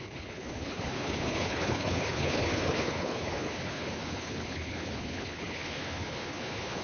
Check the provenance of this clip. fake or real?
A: fake